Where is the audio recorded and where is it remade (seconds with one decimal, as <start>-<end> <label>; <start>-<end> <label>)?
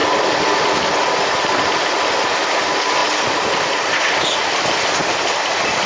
0.0-5.9 recorded